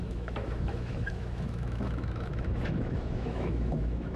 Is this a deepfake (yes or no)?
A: yes